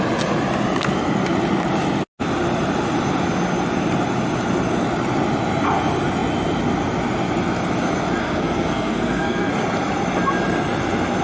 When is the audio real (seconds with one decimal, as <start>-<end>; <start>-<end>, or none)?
0.0-8.2; 9.5-11.2